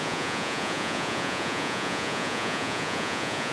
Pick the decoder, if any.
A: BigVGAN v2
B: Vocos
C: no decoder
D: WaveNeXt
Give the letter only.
B